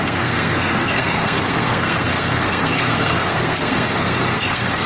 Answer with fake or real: fake